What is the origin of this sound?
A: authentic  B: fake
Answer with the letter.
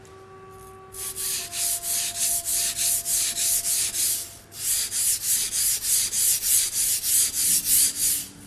A